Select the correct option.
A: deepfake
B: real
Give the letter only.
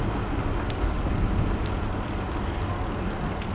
B